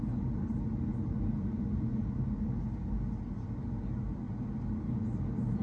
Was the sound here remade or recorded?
recorded